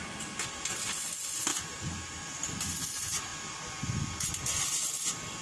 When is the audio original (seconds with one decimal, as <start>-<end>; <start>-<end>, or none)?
0.0-5.4

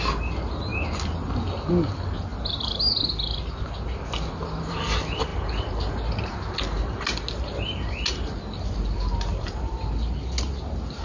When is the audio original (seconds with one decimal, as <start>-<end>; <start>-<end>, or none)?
0.0-9.3; 9.9-11.0